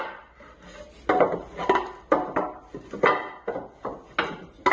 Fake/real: real